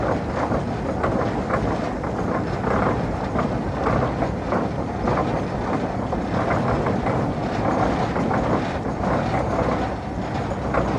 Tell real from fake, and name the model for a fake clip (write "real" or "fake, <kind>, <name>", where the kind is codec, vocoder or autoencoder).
real